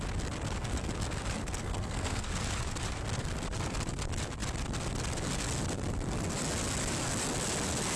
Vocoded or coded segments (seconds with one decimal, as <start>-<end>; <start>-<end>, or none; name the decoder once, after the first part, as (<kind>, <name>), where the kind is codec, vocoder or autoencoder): 1.4-2.3 (codec, SNAC)